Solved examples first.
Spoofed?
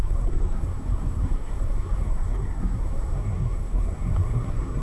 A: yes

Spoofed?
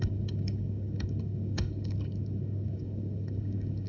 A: yes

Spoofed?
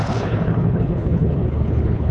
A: yes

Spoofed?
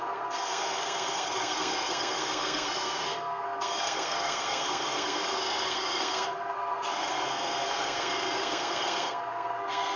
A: yes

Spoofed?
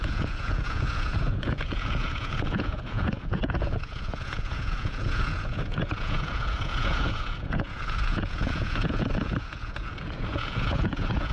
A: yes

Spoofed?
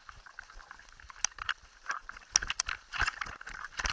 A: no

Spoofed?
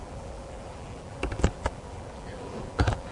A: yes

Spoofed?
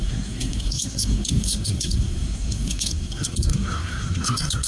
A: yes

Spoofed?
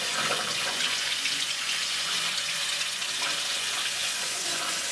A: yes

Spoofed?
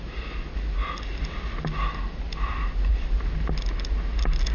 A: no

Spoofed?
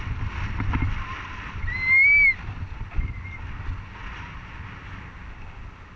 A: no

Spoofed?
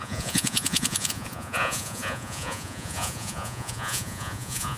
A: yes